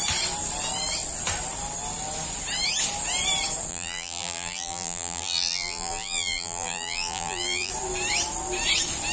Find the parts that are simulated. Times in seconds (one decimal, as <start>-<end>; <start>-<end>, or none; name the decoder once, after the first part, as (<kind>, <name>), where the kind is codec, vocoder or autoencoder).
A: 3.7-7.7 (vocoder, BigVGAN v2)